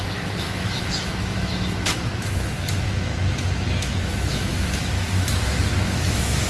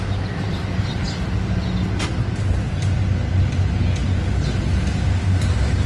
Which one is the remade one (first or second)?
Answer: first